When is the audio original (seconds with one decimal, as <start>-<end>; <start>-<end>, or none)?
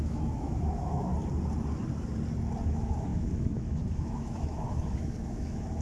1.1-2.7